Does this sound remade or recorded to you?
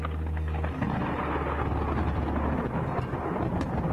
recorded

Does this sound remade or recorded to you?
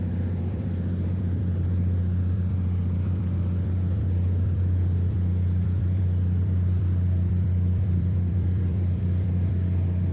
remade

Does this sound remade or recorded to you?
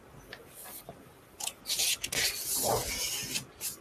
recorded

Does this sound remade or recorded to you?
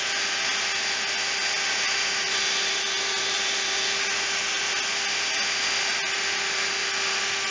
recorded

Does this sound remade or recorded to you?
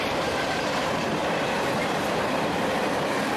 remade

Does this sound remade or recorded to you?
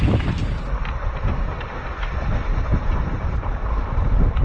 remade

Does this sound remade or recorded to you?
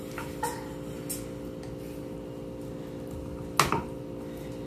recorded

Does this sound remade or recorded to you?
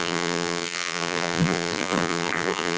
remade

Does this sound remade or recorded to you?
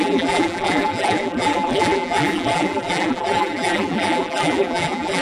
remade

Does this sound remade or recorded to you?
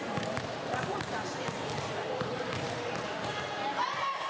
remade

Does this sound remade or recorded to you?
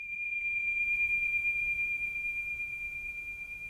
remade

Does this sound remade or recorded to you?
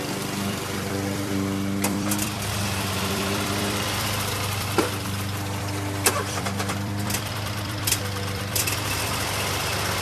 remade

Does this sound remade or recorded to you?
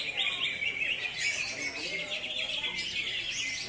recorded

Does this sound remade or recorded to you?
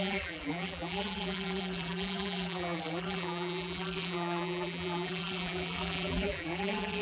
remade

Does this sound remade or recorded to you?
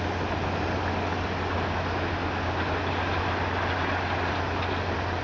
recorded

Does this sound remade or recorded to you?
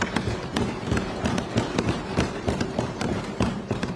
remade